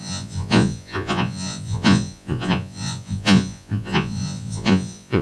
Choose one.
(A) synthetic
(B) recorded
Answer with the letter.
A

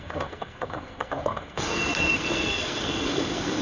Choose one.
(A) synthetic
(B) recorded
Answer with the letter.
A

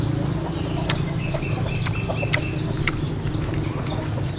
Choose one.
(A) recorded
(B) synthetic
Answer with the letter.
A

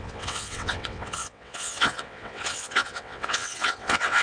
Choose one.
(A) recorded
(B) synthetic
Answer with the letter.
B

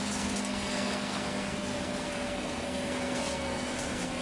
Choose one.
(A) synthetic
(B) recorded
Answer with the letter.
A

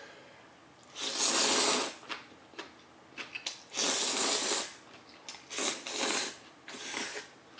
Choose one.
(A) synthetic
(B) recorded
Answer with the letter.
B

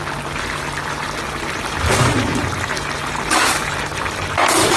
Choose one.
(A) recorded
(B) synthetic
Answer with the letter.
A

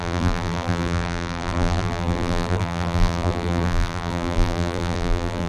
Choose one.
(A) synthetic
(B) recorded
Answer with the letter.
A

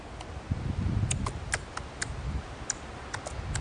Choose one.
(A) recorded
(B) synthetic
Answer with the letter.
A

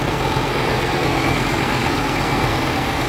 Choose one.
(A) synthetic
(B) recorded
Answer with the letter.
A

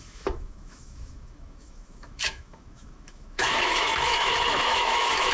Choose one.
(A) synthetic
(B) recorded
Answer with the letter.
A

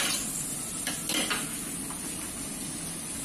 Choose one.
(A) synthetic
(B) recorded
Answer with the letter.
B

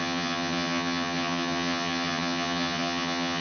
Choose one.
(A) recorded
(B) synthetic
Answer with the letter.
B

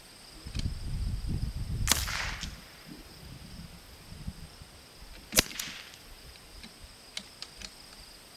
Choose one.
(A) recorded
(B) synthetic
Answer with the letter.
A